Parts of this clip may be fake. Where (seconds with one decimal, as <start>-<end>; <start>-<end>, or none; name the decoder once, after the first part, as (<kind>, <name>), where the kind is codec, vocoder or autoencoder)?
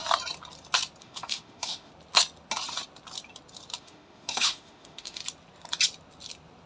1.0-1.9 (autoencoder, DAC-VAE); 3.8-5.2